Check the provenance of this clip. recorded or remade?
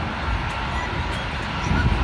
recorded